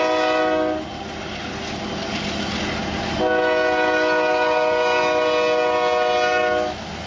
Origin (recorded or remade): recorded